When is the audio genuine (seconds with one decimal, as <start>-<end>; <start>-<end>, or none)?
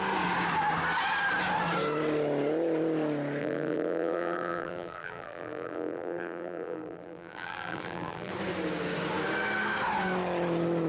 0.0-3.4; 8.3-10.9